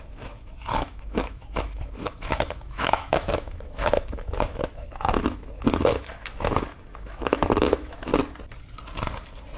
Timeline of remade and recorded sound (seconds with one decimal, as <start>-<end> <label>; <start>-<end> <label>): 0.0-8.1 remade; 8.1-9.6 recorded